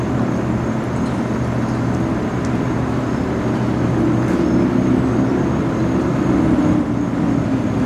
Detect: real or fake real